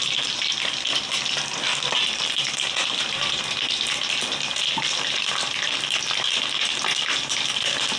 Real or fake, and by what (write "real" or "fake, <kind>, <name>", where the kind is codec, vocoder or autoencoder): real